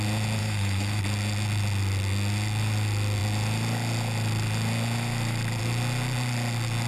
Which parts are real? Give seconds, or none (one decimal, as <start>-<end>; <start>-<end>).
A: 0.0-0.4; 1.0-6.9